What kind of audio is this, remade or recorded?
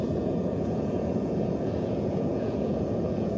remade